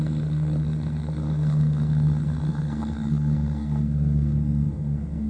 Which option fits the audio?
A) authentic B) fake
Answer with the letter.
B